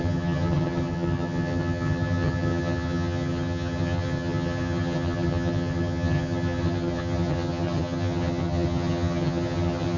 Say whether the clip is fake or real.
fake